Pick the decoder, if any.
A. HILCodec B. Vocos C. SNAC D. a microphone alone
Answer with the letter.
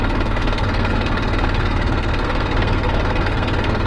C